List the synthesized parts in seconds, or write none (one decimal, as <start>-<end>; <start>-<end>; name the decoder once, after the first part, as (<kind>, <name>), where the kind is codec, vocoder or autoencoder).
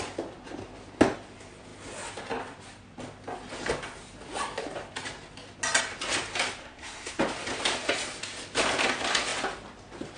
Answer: 6.6-7.2 (codec, SNAC)